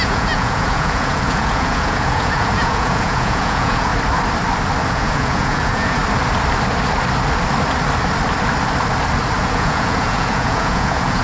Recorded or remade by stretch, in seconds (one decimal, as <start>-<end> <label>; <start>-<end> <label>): 0.0-3.9 remade; 3.9-4.9 recorded; 4.9-6.0 remade; 6.0-9.4 recorded; 9.4-11.2 remade